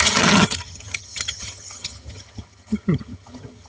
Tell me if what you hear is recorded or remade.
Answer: remade